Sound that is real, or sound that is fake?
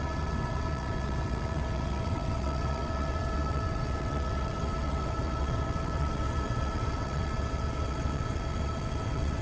fake